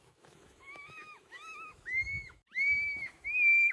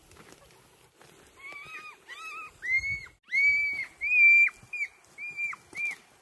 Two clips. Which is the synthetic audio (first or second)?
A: first